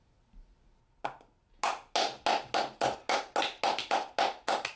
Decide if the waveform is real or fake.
real